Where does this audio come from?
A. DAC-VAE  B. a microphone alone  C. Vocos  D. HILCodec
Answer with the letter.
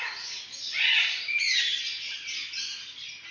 B